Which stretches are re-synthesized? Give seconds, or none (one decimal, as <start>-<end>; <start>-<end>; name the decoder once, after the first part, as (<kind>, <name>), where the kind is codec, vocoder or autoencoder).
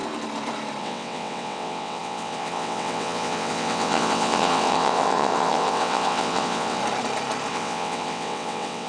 0.8-6.8 (vocoder, WaveNeXt); 7.5-8.9